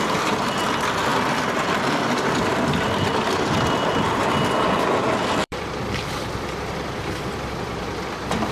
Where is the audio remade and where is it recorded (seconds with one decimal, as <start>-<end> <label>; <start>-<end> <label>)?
0.0-1.1 recorded; 1.1-4.0 remade; 4.0-5.0 recorded; 5.0-8.5 remade